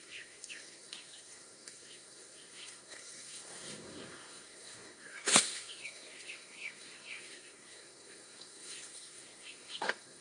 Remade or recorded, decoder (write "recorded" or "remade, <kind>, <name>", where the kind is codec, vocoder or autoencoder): remade, codec, SNAC